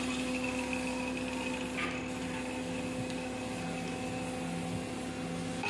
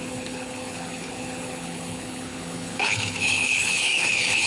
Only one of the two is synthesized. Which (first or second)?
second